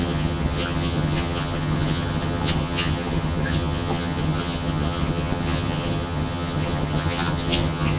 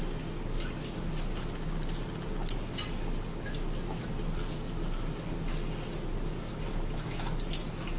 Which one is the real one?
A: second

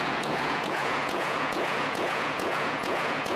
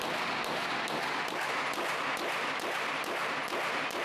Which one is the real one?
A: second